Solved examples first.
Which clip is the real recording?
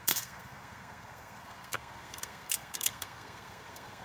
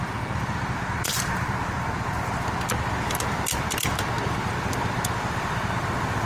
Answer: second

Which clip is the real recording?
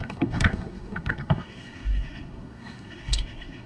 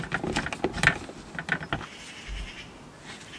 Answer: second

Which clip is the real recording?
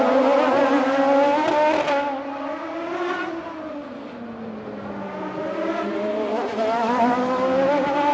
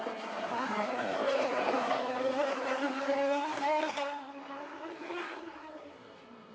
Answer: first